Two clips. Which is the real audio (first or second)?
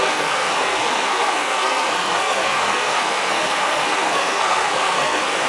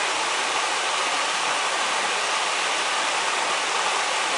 second